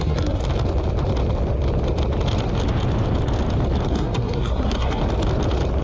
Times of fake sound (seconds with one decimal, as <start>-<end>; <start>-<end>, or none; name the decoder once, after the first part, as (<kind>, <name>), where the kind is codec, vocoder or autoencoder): 0.0-0.4 (codec, SNAC); 3.9-5.0